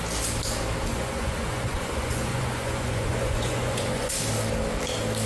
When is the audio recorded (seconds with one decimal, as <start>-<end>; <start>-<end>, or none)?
0.0-0.9; 4.1-5.3